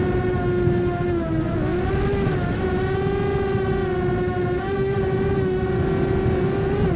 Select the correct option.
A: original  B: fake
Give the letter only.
A